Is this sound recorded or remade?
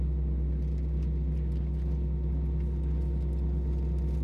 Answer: recorded